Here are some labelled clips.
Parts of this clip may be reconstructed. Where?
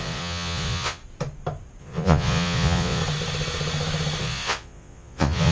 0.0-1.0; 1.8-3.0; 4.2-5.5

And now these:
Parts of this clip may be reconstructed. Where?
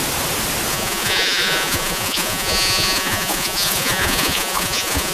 0.7-5.1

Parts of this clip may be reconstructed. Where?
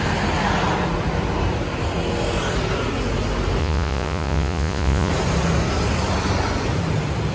3.6-5.1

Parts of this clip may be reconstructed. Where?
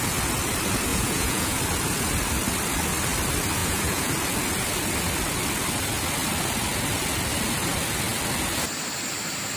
0.9-1.6; 3.6-4.1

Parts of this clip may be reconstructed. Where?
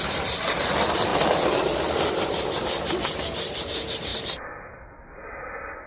none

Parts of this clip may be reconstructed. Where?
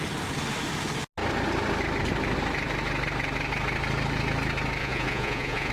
4.8-5.7